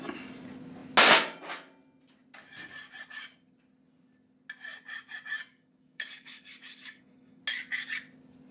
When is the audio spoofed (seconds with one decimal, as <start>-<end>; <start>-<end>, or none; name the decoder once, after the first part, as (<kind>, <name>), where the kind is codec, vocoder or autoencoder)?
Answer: 5.5-7.4 (codec, DAC)